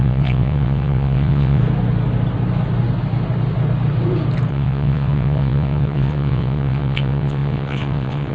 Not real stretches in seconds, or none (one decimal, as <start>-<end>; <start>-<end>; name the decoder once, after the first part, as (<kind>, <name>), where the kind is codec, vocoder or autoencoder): 0.0-1.6 (vocoder, WaveNeXt); 4.5-8.3